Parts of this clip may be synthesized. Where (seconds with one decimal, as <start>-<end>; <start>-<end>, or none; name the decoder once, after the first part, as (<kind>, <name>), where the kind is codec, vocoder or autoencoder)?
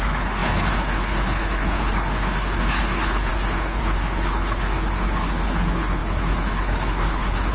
0.0-7.5 (codec, HILCodec)